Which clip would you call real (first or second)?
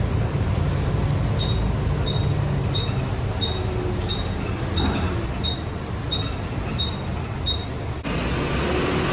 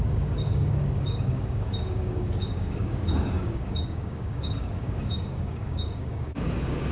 first